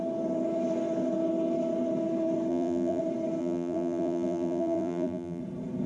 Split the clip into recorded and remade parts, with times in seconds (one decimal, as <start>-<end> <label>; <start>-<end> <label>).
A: 0.0-2.5 recorded; 2.5-3.0 remade; 3.0-3.4 recorded; 3.4-5.4 remade; 5.4-5.9 recorded